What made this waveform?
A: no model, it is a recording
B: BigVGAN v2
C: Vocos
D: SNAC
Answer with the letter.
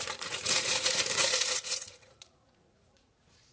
C